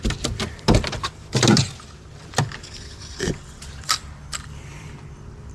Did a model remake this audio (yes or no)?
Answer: no